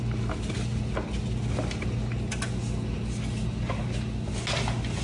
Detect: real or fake real